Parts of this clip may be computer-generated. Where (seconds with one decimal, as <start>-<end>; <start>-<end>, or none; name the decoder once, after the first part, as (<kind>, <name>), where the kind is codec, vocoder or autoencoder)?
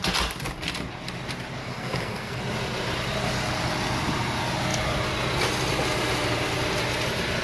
1.6-2.4 (codec, SNAC)